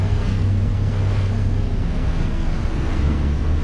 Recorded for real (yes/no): no